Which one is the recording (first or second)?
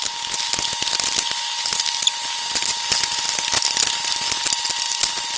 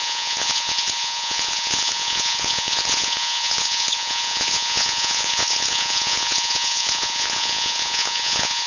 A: first